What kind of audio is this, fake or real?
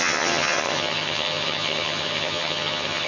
fake